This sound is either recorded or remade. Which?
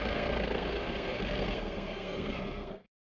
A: remade